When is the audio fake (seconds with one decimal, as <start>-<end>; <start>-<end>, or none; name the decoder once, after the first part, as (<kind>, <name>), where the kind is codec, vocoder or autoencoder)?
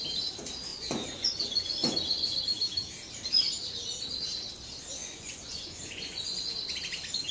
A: 0.7-2.4 (vocoder, Vocos); 5.0-6.4